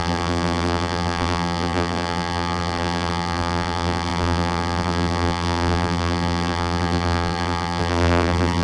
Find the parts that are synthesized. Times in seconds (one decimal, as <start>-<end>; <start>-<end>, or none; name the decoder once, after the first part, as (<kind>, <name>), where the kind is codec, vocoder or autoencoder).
0.0-8.6 (vocoder, BigVGAN v2)